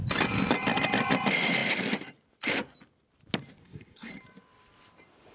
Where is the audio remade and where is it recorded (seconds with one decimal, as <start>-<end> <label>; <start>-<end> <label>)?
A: 0.0-3.6 recorded; 3.6-4.1 remade; 4.1-5.3 recorded